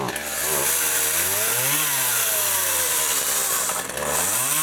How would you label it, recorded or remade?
recorded